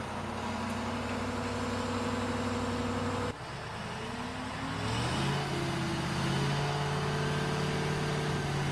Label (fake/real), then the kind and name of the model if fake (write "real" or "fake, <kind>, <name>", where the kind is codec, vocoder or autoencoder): real